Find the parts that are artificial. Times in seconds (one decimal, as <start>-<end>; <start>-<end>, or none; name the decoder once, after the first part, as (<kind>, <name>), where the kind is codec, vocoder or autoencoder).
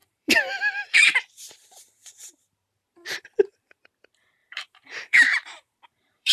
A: 0.0-3.8 (vocoder, BigVGAN v2); 4.4-6.3